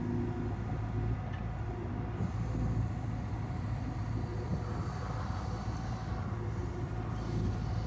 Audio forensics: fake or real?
real